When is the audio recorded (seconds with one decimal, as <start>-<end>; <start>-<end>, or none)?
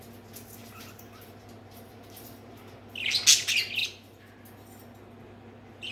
0.0-0.6; 2.9-3.8; 4.4-5.9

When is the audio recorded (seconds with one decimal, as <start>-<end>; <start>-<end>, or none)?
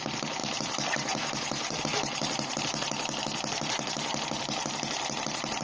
none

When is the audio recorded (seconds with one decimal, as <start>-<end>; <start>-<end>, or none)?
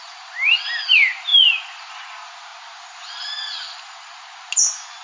0.0-5.0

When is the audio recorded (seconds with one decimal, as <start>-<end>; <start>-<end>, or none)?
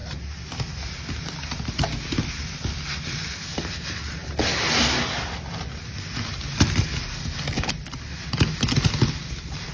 0.0-9.7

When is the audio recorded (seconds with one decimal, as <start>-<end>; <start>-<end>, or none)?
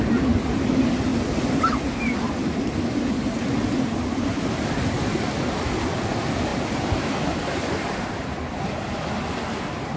0.0-10.0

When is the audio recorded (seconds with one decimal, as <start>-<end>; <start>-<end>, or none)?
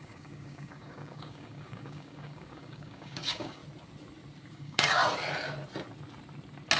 3.6-4.5; 5.0-6.8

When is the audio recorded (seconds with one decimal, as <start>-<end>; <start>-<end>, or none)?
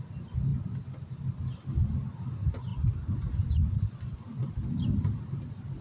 0.0-5.8